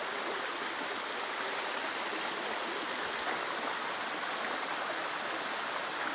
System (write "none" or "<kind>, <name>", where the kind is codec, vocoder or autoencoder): none